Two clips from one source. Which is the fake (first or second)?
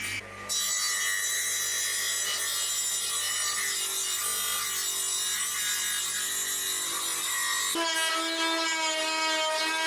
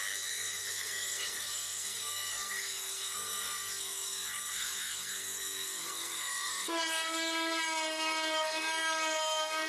second